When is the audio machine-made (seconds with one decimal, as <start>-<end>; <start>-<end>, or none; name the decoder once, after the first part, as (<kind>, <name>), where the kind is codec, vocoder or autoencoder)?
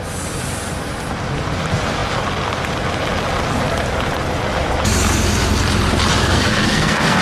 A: 6.2-7.2 (codec, SNAC)